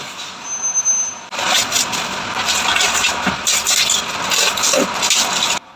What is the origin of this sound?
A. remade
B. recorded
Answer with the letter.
B